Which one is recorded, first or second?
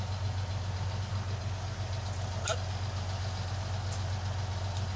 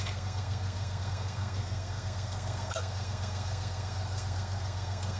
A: first